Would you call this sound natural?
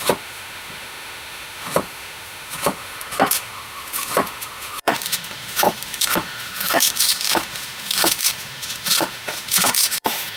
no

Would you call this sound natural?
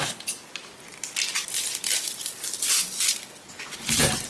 yes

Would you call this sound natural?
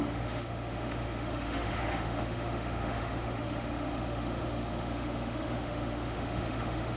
no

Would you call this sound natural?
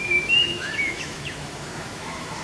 no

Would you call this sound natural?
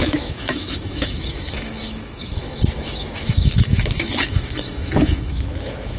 no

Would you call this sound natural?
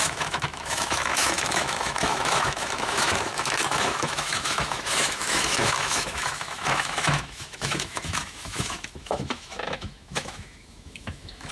no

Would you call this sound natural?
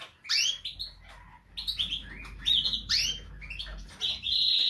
yes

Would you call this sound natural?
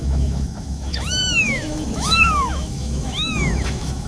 no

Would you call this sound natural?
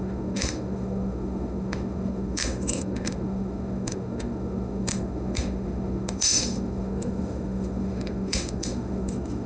no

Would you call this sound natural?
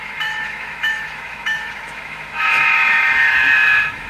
no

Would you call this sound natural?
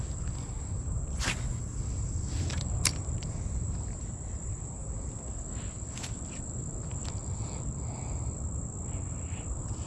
yes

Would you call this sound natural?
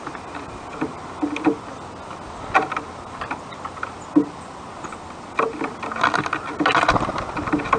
yes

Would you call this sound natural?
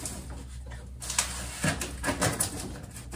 yes